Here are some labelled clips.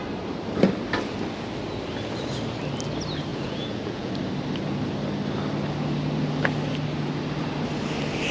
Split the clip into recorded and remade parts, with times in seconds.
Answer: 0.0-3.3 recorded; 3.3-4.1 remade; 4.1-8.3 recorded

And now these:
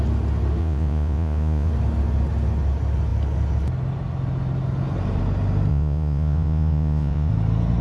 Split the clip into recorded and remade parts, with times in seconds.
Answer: 0.0-0.6 recorded; 0.6-1.7 remade; 1.7-5.7 recorded; 5.7-7.3 remade; 7.3-7.8 recorded

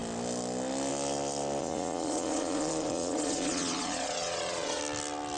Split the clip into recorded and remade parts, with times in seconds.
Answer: 0.0-1.6 recorded; 1.6-4.8 remade; 4.8-5.4 recorded

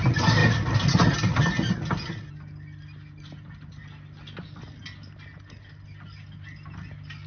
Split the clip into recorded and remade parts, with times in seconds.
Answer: 0.0-7.3 recorded

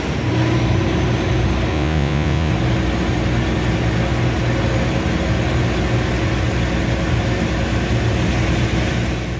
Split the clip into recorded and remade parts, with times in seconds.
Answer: 0.0-1.7 recorded; 1.7-2.5 remade; 2.5-9.4 recorded